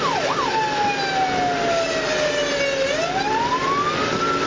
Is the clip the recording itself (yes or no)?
yes